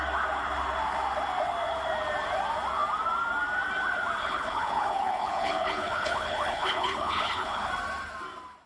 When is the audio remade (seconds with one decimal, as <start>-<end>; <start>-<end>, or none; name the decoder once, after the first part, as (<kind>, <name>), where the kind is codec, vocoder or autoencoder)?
4.2-7.7 (codec, HILCodec)